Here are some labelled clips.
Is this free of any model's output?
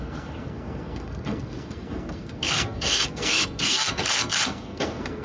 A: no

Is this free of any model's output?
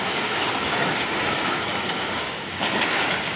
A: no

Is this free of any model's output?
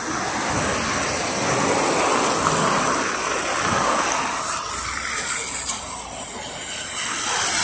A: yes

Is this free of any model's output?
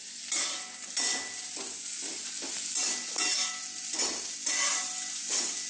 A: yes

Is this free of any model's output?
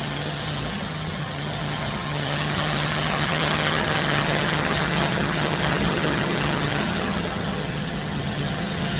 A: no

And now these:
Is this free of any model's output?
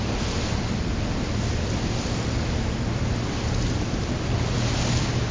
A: yes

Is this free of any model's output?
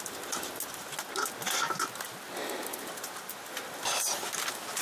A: yes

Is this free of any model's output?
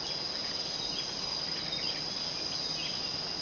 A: yes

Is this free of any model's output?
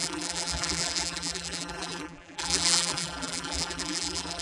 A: no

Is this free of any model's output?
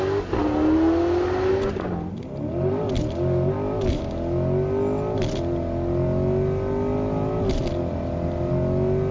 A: yes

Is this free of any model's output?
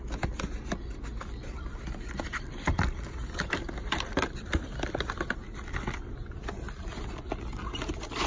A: yes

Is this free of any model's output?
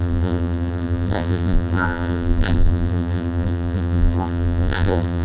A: no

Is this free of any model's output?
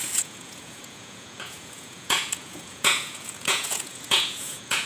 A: no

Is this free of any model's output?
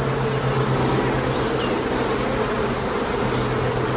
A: yes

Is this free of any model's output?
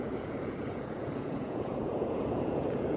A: no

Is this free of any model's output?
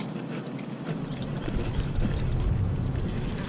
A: yes